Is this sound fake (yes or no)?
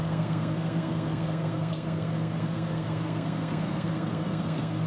yes